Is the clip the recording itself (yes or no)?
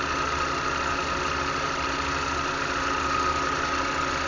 yes